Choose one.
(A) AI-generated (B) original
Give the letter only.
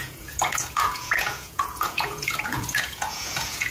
A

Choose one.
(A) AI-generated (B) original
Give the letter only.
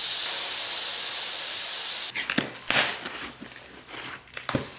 B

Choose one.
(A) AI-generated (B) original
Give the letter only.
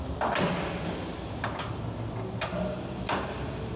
B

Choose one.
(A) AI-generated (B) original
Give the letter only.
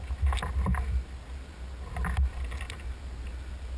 B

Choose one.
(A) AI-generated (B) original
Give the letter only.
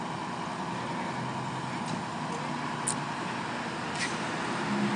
B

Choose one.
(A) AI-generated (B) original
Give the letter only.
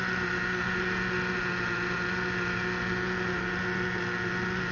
B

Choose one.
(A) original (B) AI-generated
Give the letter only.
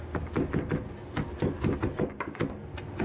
A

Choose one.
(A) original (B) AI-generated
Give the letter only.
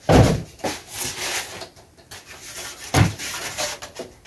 A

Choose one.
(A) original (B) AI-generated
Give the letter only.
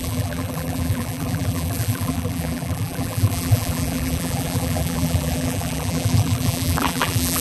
B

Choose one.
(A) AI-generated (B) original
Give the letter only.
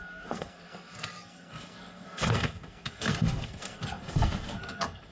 A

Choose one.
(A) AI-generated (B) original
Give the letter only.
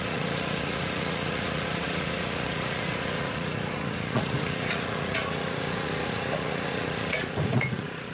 A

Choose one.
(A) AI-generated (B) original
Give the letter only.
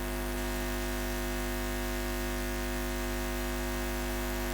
B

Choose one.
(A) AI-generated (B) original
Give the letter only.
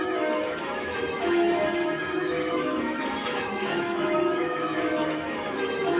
A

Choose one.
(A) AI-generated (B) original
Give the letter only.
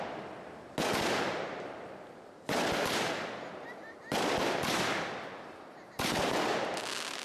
B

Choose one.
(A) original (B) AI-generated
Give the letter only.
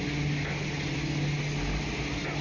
A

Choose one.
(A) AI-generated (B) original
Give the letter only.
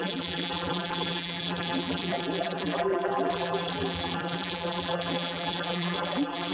A